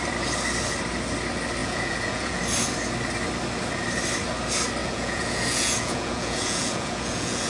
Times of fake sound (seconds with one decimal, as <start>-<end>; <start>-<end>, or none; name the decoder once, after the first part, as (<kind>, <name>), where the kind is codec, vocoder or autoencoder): 1.6-2.4 (vocoder, Vocos); 4.8-7.5